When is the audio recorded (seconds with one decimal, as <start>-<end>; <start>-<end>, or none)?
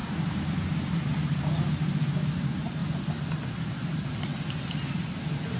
2.8-3.5; 4.3-5.6